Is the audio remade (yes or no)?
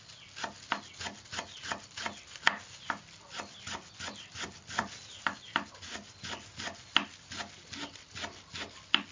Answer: no